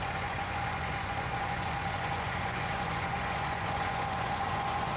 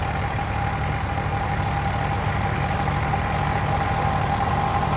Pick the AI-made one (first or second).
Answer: first